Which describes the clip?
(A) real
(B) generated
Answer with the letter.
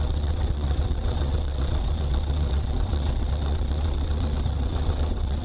B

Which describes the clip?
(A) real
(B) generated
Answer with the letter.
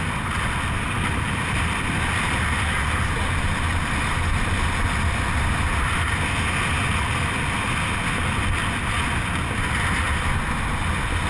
A